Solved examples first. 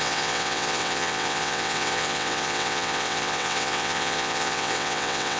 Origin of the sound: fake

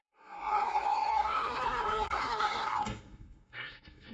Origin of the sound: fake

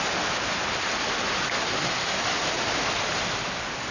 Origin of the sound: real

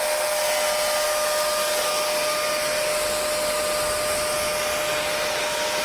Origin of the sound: real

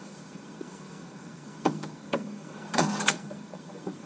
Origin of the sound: fake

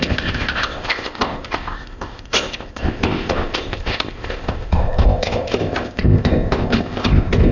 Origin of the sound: fake